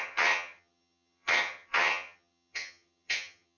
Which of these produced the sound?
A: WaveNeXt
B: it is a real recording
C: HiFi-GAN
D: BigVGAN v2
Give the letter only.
C